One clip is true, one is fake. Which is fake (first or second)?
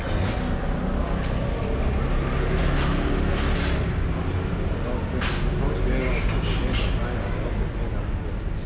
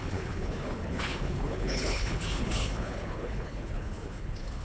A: second